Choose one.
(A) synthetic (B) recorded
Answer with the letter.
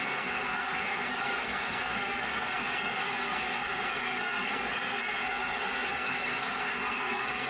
A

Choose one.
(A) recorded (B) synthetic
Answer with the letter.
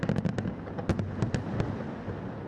A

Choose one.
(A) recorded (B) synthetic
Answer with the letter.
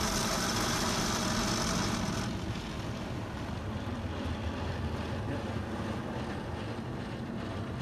A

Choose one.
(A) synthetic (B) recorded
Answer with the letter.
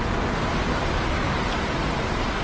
B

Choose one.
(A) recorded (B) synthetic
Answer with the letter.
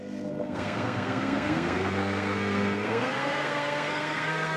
B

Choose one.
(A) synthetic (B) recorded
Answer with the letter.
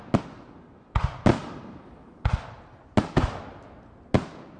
B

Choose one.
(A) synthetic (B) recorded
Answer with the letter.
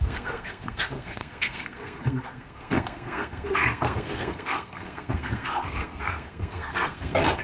A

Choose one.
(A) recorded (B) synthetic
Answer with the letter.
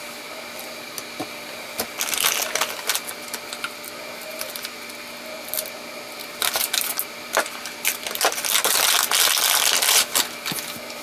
A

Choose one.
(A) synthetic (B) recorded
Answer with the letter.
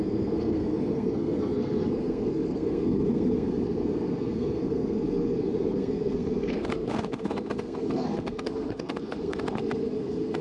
A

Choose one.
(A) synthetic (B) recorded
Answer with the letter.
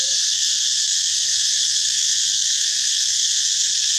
A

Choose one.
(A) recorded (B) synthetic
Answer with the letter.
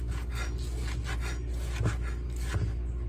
A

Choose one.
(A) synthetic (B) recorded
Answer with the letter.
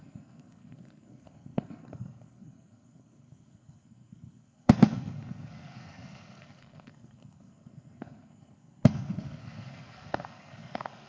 A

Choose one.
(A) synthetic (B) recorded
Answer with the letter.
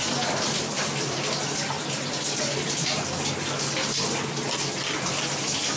B